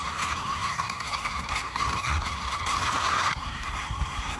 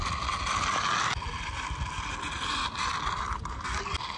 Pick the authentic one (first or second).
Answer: second